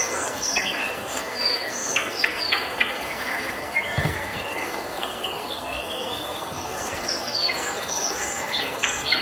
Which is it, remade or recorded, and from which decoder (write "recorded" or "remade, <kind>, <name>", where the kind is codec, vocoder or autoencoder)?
remade, codec, SNAC